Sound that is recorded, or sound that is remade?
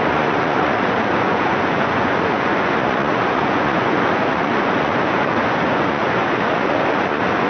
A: remade